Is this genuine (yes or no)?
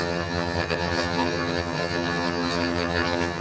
no